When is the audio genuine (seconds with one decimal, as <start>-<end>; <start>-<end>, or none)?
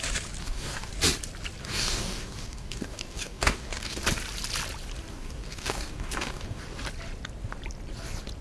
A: 0.0-0.4; 0.9-1.6; 4.0-5.1; 6.6-8.4